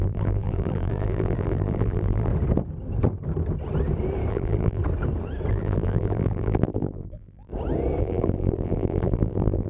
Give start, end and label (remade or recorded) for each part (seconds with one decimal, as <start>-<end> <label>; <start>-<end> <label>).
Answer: 0.0-2.3 remade; 2.3-4.3 recorded; 4.3-4.8 remade; 4.8-5.5 recorded; 5.5-7.5 remade; 7.5-8.0 recorded; 8.0-9.7 remade